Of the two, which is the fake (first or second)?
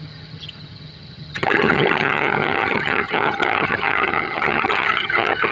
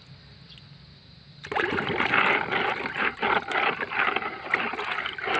first